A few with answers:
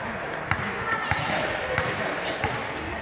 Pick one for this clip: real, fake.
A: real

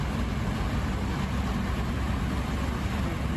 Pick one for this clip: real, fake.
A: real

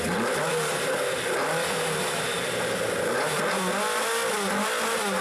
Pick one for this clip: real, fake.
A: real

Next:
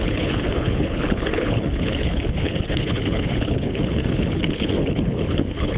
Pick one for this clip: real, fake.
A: fake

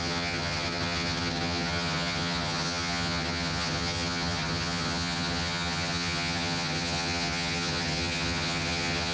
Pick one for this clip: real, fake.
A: fake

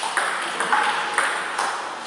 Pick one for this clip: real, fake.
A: real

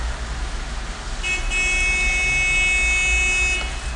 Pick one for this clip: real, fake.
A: real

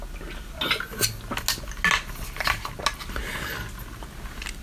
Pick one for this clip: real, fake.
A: real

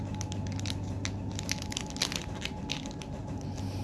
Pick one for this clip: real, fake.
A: real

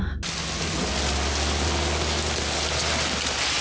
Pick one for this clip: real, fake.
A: real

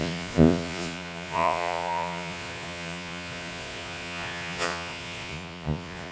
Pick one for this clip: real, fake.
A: fake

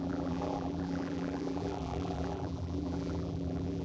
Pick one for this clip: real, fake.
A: fake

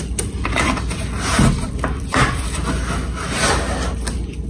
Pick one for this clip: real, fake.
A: real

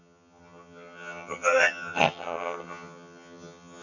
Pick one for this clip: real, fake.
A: fake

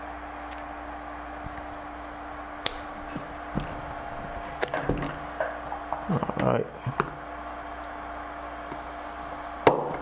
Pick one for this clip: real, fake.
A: real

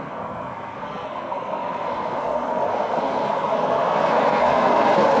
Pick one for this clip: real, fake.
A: fake